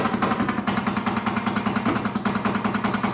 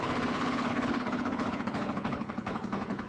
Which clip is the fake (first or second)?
second